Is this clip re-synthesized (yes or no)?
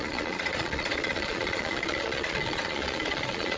yes